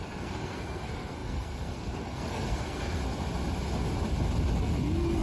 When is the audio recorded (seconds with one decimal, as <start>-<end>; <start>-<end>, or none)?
3.0-4.6